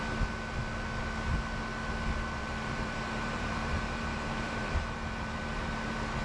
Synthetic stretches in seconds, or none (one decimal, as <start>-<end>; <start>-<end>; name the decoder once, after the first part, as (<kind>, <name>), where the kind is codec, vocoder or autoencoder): 2.4-5.4 (vocoder, BigVGAN v2)